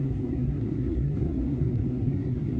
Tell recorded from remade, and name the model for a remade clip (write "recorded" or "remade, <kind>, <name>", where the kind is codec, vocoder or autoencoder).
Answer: remade, codec, SNAC